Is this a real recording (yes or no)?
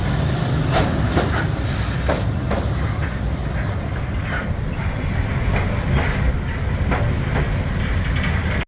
yes